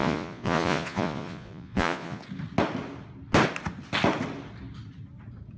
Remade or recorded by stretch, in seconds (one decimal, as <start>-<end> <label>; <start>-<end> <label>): 0.0-2.2 remade; 2.2-5.6 recorded